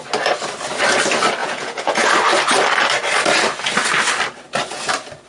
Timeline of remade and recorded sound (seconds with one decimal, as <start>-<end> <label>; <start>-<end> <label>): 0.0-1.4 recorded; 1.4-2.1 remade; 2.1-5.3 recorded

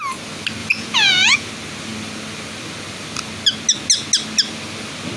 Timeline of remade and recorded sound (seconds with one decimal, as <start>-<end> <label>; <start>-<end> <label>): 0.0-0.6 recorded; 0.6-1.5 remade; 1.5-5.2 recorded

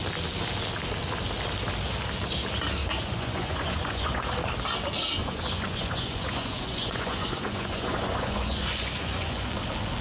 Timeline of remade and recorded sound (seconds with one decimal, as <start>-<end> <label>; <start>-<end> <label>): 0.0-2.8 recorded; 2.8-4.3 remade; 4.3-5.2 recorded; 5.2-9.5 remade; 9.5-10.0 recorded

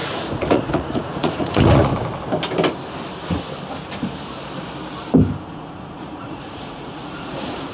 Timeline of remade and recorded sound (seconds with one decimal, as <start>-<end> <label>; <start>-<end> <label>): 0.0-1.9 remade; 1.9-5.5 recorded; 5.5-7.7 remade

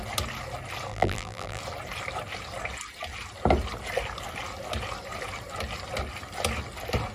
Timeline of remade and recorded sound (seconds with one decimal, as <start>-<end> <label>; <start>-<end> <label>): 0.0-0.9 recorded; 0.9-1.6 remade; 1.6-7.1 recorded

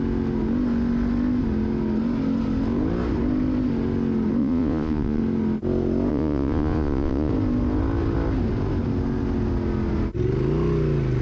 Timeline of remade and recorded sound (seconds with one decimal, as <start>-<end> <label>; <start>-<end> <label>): 0.0-4.4 recorded; 4.4-5.2 remade; 5.2-6.1 recorded; 6.1-7.3 remade; 7.3-11.2 recorded

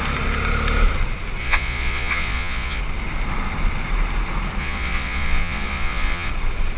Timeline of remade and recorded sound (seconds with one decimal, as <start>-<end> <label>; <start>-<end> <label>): 0.0-1.4 recorded; 1.4-2.8 remade; 2.8-4.6 recorded; 4.6-6.3 remade; 6.3-6.8 recorded

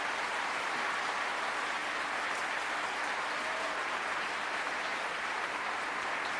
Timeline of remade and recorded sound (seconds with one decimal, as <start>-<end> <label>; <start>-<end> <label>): 0.0-6.4 recorded